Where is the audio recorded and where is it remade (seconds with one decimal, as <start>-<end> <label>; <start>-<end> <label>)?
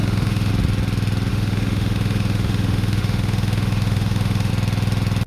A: 0.0-0.5 remade; 0.5-1.3 recorded; 1.3-4.5 remade; 4.5-5.3 recorded